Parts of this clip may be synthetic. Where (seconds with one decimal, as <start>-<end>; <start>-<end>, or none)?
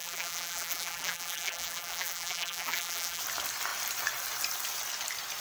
0.0-3.2